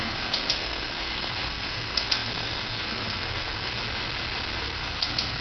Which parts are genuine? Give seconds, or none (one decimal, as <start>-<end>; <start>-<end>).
3.8-4.6